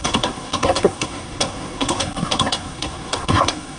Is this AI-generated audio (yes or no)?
yes